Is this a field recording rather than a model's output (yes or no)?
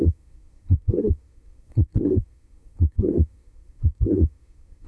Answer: no